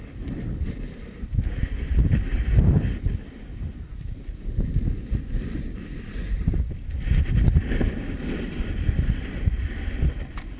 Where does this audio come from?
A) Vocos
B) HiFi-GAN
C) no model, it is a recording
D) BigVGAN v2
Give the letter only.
C